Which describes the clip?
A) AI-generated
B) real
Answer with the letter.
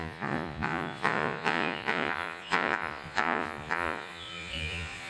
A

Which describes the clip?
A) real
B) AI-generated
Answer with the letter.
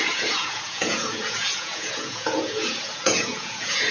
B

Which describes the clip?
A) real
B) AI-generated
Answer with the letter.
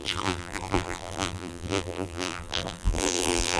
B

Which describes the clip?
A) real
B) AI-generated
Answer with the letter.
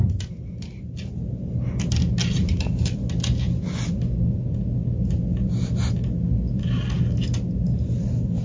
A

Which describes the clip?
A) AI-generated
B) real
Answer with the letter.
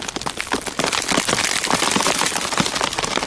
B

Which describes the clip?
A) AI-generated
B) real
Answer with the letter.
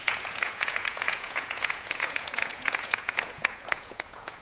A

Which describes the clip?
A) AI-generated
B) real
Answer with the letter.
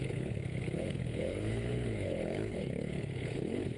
A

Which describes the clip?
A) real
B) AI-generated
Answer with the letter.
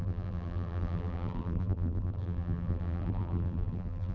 B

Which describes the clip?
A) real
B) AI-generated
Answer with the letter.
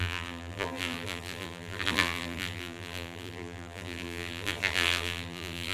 B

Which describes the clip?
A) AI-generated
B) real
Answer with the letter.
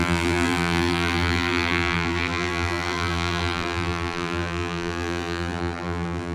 A